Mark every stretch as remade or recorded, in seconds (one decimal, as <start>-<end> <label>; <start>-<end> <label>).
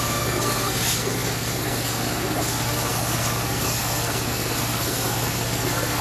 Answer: 0.0-6.0 remade